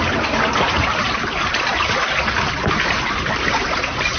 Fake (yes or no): no